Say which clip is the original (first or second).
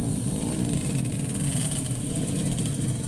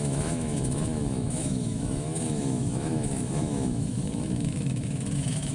first